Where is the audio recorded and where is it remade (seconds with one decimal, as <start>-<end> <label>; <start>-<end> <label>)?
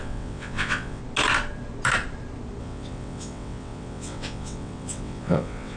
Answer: 0.0-1.0 remade; 1.0-2.6 recorded; 2.6-5.8 remade